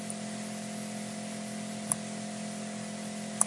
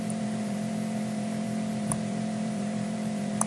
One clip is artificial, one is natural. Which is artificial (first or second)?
second